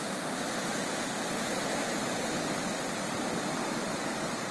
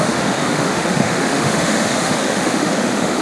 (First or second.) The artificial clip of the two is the second